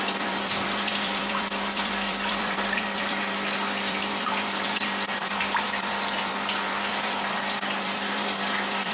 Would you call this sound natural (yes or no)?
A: no